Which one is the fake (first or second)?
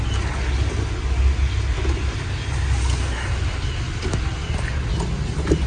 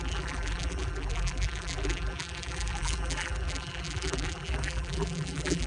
second